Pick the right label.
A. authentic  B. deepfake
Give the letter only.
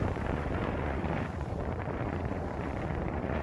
B